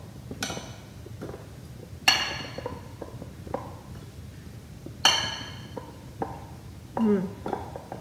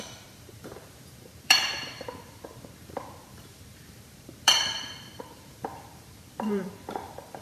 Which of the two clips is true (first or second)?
first